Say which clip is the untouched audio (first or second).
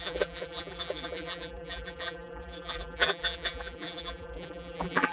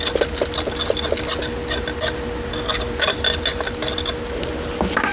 second